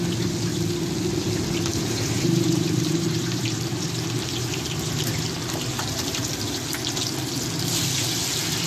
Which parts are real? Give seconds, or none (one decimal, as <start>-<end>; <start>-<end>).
0.0-1.7; 5.2-8.7